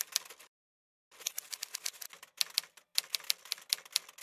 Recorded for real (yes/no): yes